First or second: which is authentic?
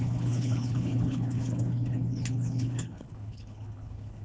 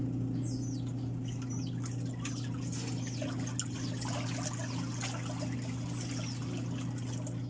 second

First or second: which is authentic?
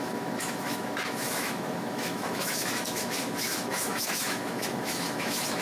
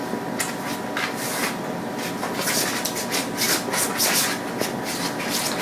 second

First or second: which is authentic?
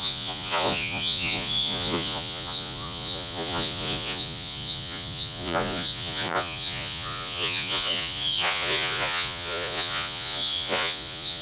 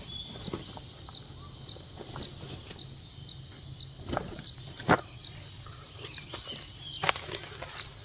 second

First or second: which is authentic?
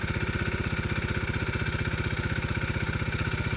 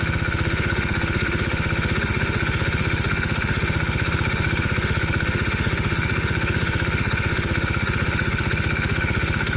first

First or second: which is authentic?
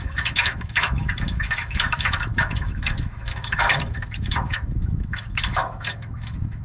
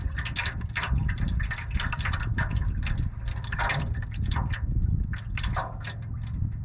second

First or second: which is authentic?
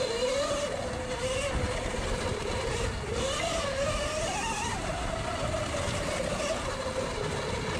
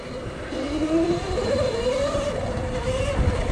first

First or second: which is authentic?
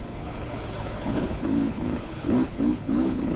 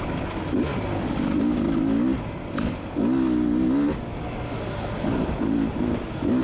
second